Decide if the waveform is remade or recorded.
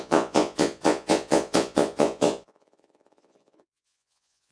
remade